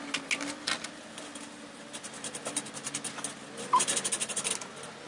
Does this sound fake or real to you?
real